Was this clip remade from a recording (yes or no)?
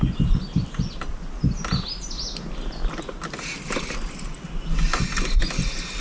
no